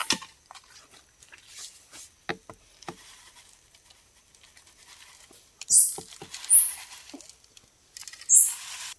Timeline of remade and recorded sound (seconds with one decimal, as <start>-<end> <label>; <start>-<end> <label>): 0.0-9.0 recorded